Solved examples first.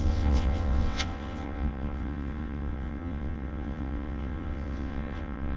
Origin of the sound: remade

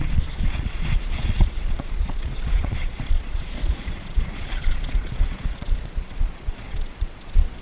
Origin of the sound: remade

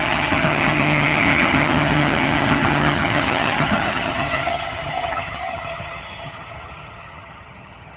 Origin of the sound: remade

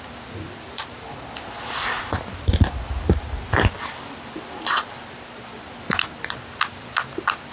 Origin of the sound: recorded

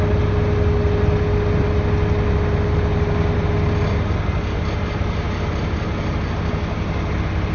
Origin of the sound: recorded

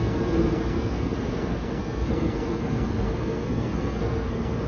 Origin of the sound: remade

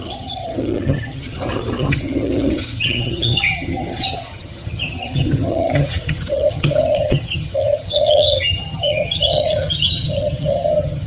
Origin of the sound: remade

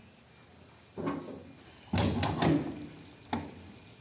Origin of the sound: recorded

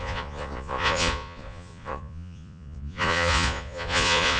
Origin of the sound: remade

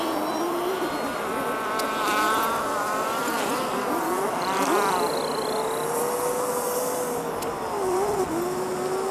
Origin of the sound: recorded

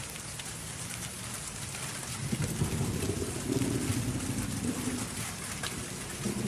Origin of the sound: remade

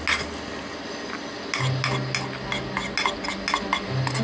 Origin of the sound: recorded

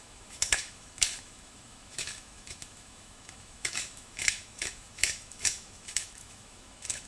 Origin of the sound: remade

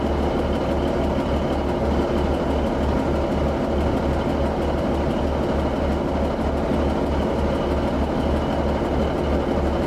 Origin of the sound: recorded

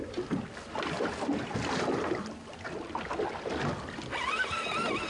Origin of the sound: recorded